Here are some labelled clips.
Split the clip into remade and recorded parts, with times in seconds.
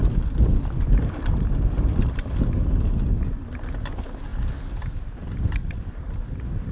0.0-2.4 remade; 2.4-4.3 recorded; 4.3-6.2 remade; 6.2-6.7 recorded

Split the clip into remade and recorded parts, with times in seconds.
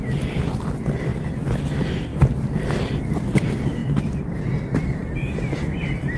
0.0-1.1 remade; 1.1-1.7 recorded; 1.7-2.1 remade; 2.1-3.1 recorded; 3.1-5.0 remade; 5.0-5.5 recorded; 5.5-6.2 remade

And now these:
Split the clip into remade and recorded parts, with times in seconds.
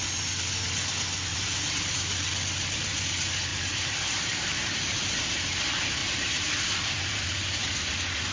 0.0-1.3 recorded; 1.3-2.0 remade; 2.0-3.5 recorded; 3.5-5.6 remade; 5.6-6.0 recorded; 6.0-7.6 remade; 7.6-8.3 recorded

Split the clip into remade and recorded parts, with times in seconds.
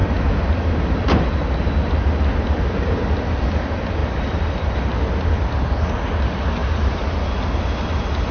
0.0-1.0 remade; 1.0-6.6 recorded; 6.6-7.6 remade; 7.6-8.3 recorded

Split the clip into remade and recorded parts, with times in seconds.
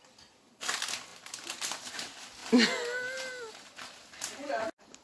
0.0-1.1 recorded; 1.1-1.9 remade; 1.9-4.4 recorded; 4.4-5.0 remade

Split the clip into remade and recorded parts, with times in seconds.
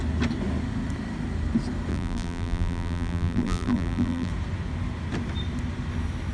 0.0-1.9 recorded; 1.9-4.3 remade; 4.3-6.3 recorded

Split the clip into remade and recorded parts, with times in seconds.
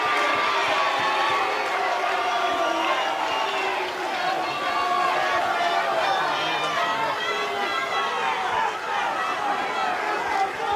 0.0-0.6 recorded; 0.6-2.5 remade; 2.5-10.8 recorded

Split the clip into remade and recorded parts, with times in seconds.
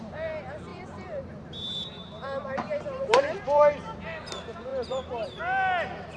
0.0-0.7 recorded; 0.7-4.3 remade; 4.3-4.7 recorded; 4.7-5.4 remade; 5.4-6.2 recorded